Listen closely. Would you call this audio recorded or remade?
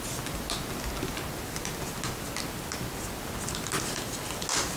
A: recorded